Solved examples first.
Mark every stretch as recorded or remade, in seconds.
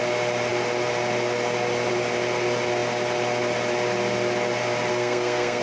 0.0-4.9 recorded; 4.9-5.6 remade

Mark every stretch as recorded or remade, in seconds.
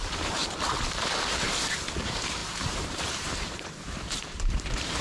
0.0-0.4 remade; 0.4-2.0 recorded; 2.0-5.0 remade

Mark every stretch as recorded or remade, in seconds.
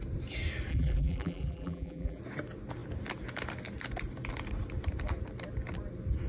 0.0-0.7 recorded; 0.7-2.2 remade; 2.2-6.3 recorded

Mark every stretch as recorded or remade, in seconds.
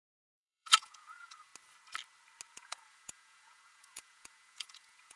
0.0-1.5 remade; 1.5-2.5 recorded; 2.5-5.2 remade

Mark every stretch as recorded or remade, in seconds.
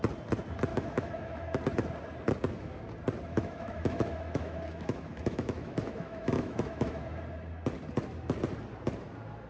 0.0-0.7 recorded; 0.7-1.6 remade; 1.6-3.3 recorded; 3.3-7.2 remade; 7.2-9.5 recorded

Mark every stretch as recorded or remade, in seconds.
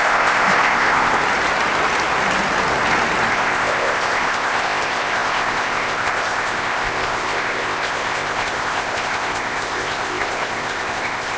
0.0-1.2 remade; 1.2-3.3 recorded; 3.3-11.4 remade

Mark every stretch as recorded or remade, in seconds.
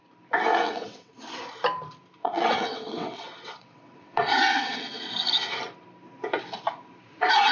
0.0-0.5 recorded; 0.5-1.1 remade; 1.1-2.2 recorded; 2.2-5.0 remade; 5.0-7.5 recorded